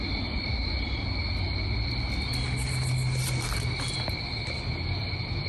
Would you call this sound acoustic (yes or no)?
yes